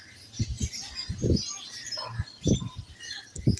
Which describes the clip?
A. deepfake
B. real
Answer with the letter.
B